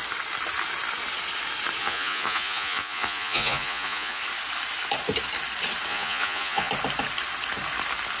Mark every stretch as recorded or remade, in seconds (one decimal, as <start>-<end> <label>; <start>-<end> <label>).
0.0-1.8 recorded; 1.8-4.2 remade; 4.2-5.9 recorded; 5.9-6.7 remade; 6.7-8.2 recorded